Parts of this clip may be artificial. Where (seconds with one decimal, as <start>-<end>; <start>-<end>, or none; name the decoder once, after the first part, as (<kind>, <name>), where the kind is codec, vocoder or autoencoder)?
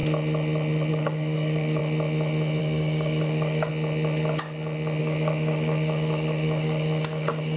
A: 0.9-1.8 (codec, DAC); 2.6-3.7; 5.0-7.6